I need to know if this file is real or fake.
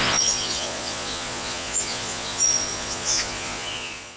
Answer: fake